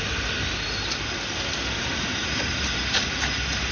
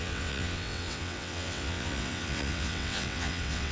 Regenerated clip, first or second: second